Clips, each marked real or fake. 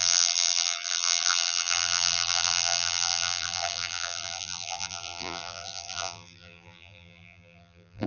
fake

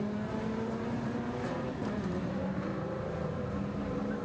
fake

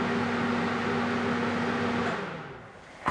real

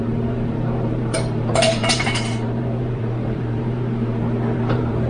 fake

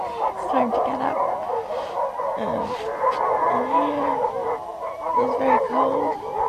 real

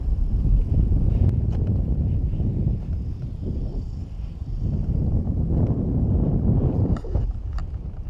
fake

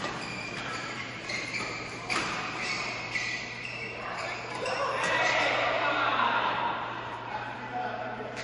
fake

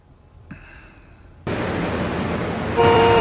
fake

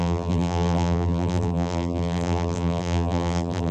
fake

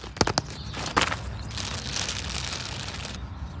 real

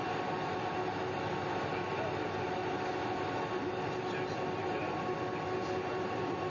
real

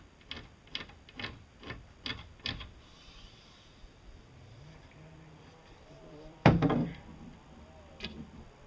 real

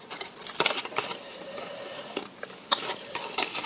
fake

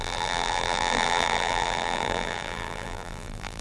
fake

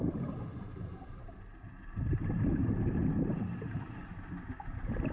fake